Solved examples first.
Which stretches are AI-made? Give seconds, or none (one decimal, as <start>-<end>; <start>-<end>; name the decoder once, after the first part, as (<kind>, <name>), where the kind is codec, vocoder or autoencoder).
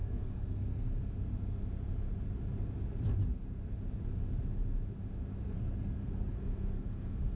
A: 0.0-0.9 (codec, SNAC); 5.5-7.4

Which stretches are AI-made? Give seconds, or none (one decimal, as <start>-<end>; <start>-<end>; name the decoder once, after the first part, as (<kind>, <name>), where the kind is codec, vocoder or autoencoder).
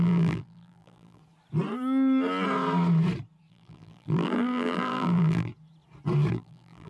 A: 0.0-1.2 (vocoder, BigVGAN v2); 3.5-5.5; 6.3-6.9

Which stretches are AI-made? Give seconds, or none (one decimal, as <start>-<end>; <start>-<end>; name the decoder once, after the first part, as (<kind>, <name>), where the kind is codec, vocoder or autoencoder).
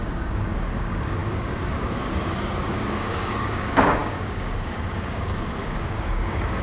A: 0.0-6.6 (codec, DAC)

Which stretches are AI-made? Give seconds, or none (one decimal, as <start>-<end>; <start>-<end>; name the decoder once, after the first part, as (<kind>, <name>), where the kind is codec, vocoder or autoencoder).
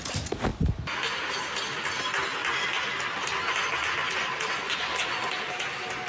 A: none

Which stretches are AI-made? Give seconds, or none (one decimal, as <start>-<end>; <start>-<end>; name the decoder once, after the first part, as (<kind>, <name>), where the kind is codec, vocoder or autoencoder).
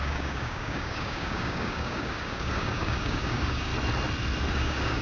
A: 0.0-3.7 (codec, DAC); 4.5-5.0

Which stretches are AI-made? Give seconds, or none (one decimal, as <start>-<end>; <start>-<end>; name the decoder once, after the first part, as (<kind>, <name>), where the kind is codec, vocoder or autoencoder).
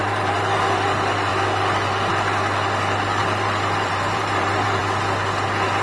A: 0.0-0.6 (vocoder, BigVGAN v2); 3.2-4.8